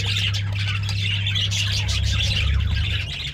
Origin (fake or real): real